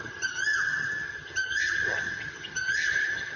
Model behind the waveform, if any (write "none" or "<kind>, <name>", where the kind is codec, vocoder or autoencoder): vocoder, HiFi-GAN